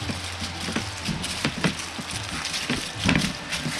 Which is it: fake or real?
real